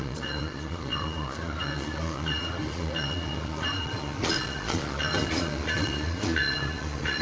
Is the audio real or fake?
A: fake